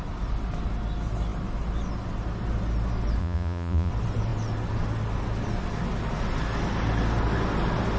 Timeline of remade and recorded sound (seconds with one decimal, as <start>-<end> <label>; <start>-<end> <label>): 0.0-3.2 recorded; 3.2-3.9 remade; 3.9-8.0 recorded